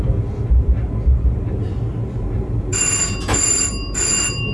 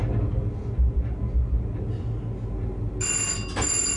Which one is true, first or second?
second